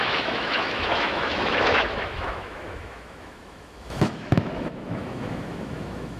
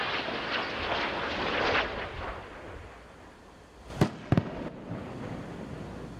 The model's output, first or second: first